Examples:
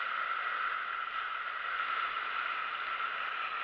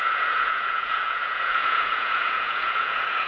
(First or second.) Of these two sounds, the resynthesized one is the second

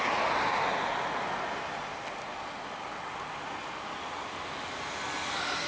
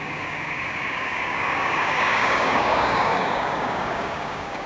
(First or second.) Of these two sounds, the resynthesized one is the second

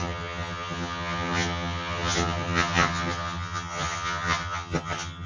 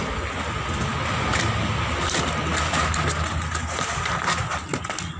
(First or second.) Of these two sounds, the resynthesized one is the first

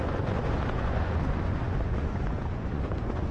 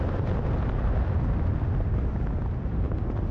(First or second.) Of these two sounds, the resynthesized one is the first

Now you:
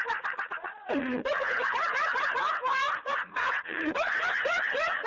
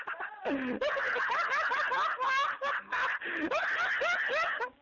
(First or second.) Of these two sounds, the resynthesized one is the first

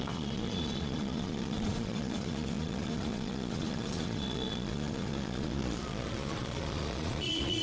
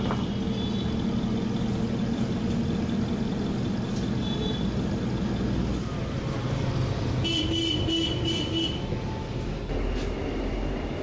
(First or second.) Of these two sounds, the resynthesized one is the first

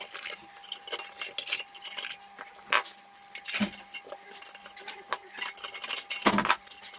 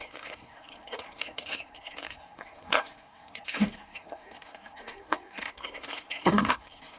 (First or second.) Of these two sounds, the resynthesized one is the second